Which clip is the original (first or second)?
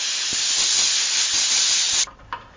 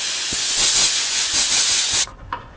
first